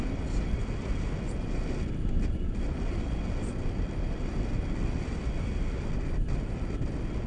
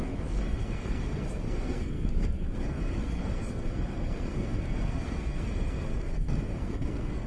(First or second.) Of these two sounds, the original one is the first